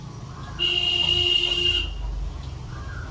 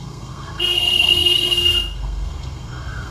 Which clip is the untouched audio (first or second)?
first